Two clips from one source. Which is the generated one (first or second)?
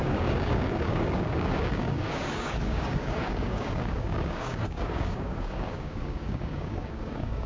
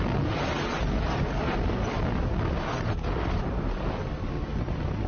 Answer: first